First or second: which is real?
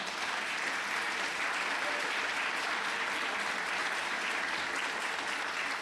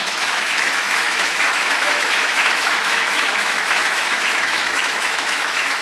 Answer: first